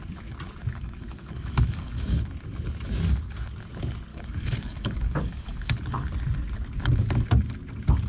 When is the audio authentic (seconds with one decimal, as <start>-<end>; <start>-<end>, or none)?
0.0-0.6; 2.2-4.1; 6.1-8.1